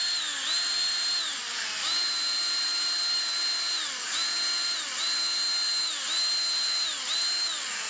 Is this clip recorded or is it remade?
recorded